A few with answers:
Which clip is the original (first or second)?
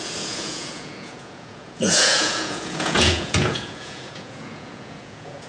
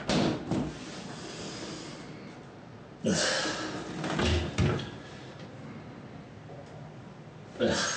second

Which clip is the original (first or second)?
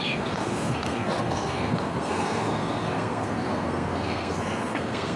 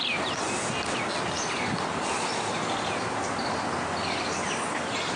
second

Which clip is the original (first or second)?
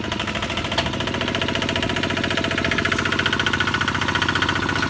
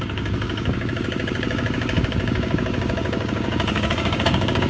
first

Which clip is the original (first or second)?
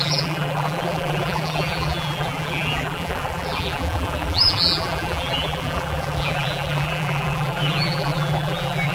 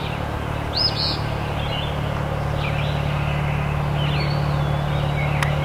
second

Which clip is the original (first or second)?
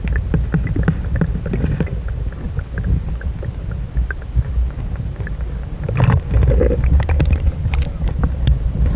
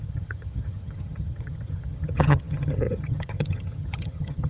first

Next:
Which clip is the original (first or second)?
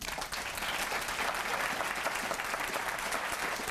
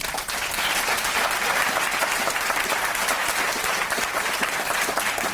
first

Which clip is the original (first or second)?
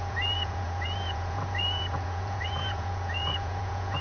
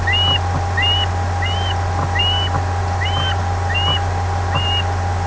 second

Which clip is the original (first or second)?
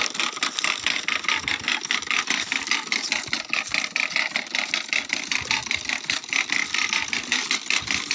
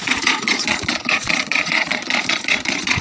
first